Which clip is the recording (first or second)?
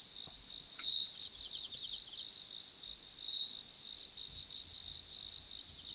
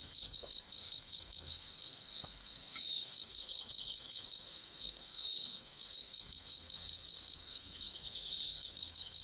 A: first